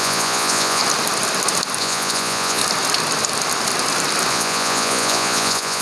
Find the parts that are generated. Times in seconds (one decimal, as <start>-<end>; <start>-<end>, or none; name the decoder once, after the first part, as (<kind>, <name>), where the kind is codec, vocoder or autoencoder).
0.0-0.8 (vocoder, Vocos); 1.8-2.6; 4.3-5.8